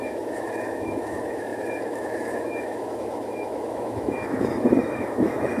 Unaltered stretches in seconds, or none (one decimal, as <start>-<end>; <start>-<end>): none